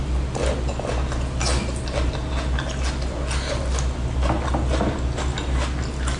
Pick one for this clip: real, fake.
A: real